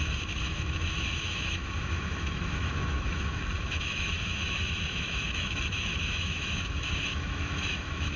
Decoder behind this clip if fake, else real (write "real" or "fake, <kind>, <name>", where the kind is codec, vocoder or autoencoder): fake, autoencoder, DAC-VAE